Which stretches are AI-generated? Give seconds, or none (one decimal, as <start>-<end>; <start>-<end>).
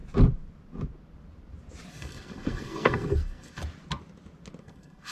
1.9-3.6; 4.6-5.1